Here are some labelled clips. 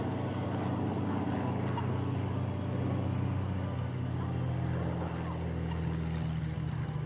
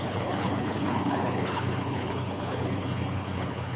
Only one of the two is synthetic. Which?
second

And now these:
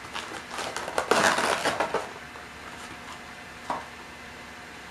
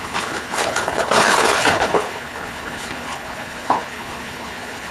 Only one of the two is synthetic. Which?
second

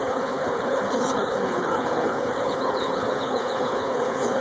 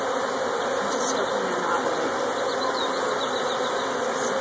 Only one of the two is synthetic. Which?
first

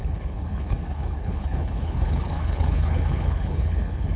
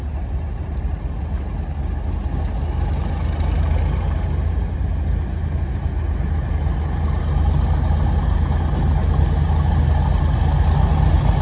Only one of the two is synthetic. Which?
first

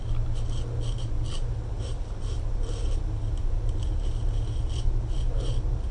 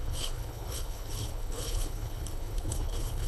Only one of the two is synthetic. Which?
second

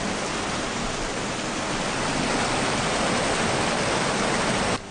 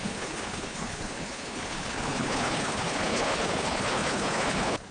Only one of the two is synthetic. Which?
second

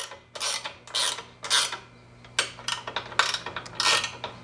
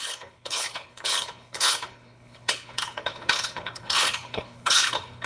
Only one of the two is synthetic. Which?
second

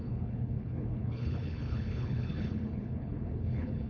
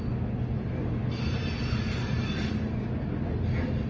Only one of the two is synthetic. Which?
first